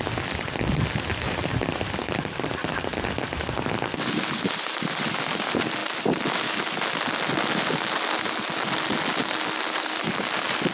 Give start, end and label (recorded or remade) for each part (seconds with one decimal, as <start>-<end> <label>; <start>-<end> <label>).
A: 0.0-10.7 recorded